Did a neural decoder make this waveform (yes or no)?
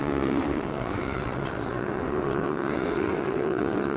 yes